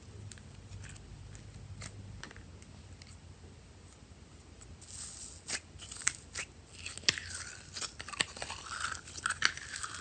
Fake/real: real